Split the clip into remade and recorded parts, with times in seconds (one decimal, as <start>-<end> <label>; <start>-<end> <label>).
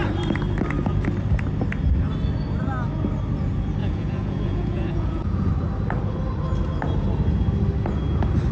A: 0.0-3.8 recorded; 3.8-5.5 remade; 5.5-8.5 recorded